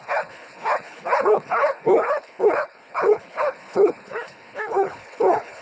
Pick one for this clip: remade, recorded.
remade